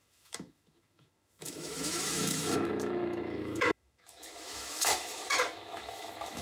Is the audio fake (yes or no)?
yes